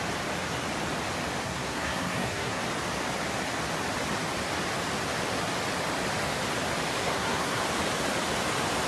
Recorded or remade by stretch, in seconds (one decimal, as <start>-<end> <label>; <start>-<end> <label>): 0.0-1.4 recorded; 1.4-2.6 remade; 2.6-7.0 recorded; 7.0-7.6 remade; 7.6-8.9 recorded